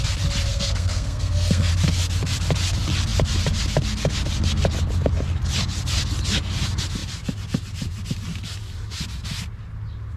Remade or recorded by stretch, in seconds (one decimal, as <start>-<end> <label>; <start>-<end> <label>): 0.0-0.5 recorded; 0.5-1.7 remade; 1.7-10.2 recorded